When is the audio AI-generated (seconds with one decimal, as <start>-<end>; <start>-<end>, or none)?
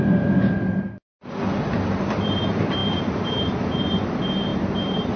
0.0-4.5